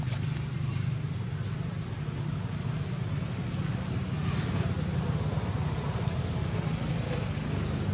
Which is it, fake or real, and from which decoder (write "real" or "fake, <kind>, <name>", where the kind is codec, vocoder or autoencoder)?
real